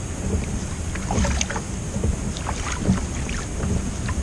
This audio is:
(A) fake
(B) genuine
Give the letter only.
B